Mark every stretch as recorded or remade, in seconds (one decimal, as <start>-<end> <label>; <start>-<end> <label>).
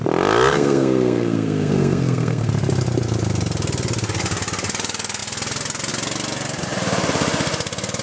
0.0-0.5 recorded; 0.5-2.5 remade; 2.5-8.0 recorded